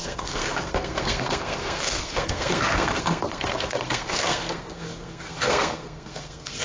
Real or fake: fake